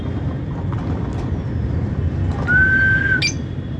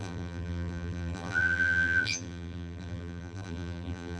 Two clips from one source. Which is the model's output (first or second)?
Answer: second